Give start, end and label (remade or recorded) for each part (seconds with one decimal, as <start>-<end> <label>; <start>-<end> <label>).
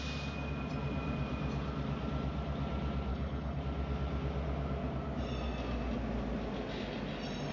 0.0-3.1 recorded; 3.1-3.6 remade; 3.6-7.5 recorded